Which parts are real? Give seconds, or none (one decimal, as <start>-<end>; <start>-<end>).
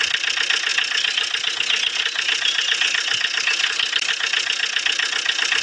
0.0-5.6